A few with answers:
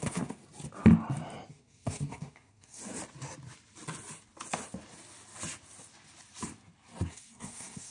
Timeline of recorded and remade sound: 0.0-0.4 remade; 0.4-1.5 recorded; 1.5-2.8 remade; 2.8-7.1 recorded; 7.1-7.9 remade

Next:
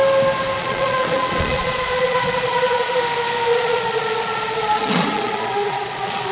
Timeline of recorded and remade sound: 0.0-0.6 recorded; 0.6-3.0 remade; 3.0-3.5 recorded; 3.5-6.3 remade